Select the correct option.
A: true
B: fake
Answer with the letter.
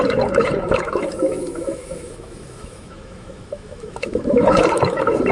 B